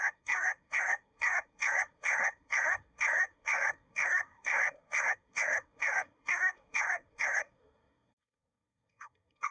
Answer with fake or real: fake